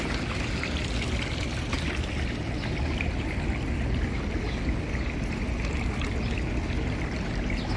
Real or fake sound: real